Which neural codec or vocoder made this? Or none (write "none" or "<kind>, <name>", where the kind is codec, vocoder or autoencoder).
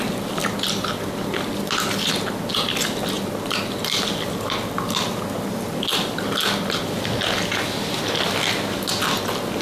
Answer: none